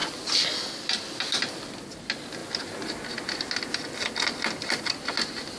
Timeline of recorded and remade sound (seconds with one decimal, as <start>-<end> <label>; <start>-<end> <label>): 0.0-5.6 recorded